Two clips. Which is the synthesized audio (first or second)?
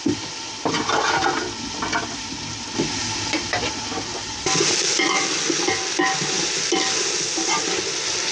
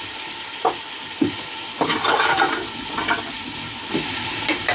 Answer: second